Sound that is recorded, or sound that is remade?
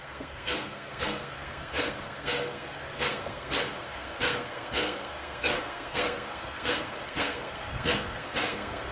remade